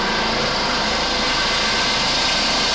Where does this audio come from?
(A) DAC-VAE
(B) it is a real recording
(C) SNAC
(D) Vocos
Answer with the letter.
B